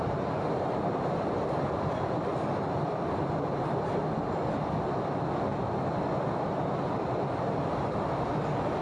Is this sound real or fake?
real